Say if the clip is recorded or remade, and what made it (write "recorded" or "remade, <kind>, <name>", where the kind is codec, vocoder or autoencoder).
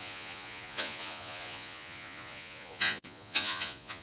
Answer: remade, vocoder, Vocos